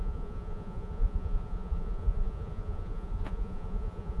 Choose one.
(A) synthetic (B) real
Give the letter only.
A